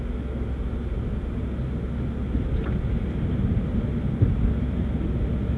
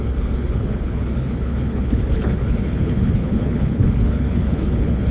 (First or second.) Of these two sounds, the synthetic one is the second